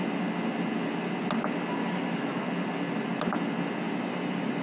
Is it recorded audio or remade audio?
recorded